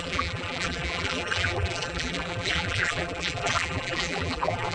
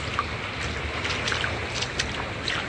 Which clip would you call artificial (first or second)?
first